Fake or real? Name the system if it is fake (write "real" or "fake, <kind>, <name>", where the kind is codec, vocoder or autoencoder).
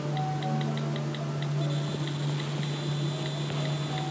real